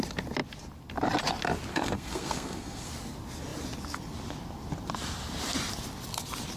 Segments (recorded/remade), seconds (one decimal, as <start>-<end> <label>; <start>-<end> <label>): 0.0-1.7 recorded; 1.7-2.9 remade; 2.9-6.6 recorded